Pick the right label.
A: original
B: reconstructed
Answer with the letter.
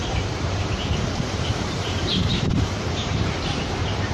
B